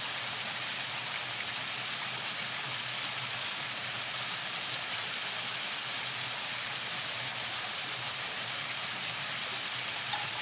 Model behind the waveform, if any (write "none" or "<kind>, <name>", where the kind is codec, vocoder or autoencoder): none